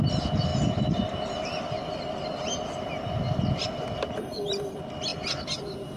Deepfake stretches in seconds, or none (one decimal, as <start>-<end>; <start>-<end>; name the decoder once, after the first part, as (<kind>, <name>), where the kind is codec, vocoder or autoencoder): none